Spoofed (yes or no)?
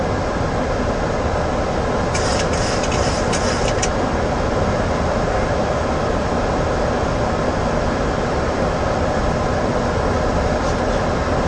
no